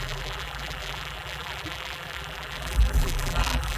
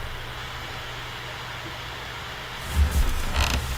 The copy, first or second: first